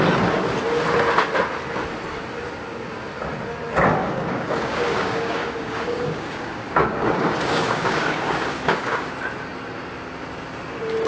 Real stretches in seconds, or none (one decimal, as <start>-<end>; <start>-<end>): 0.0-4.0; 9.1-11.1